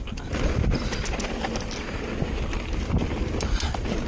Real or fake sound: real